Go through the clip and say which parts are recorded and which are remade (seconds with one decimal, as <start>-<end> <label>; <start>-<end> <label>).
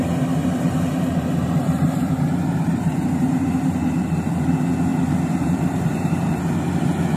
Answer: 0.0-0.4 recorded; 0.4-4.3 remade; 4.3-4.9 recorded; 4.9-6.4 remade; 6.4-7.2 recorded